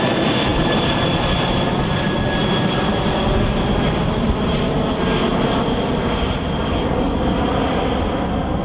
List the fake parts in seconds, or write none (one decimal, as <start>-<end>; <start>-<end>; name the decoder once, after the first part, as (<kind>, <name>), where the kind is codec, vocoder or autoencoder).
none